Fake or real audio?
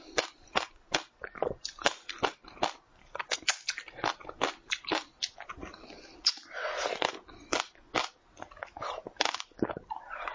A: real